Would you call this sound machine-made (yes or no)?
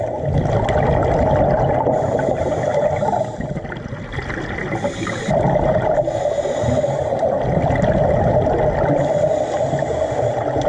no